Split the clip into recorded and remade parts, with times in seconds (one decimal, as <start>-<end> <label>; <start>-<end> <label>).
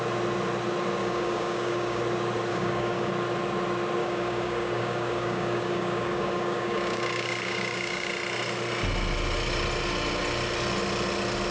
0.0-1.0 recorded; 1.0-2.0 remade; 2.0-2.5 recorded; 2.5-3.1 remade; 3.1-4.0 recorded; 4.0-8.1 remade; 8.1-11.5 recorded